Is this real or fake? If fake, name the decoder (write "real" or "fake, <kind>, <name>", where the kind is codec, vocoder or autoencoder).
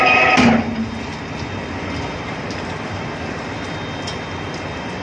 real